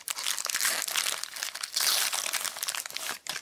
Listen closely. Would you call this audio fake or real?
real